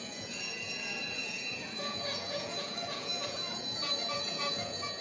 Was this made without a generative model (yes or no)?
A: no